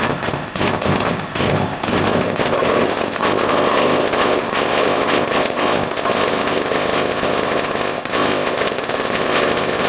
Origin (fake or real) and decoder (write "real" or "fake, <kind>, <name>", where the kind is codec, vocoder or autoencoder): fake, codec, ZipCodec